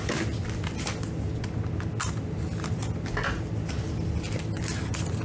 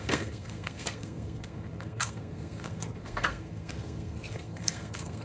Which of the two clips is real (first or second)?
first